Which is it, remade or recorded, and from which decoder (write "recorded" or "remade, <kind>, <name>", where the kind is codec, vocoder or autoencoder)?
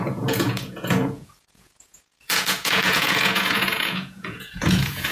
remade, vocoder, Vocos